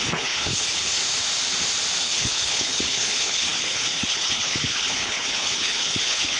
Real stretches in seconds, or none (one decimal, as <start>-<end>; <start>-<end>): 1.0-2.0